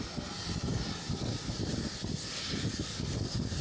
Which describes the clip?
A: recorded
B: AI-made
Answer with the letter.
A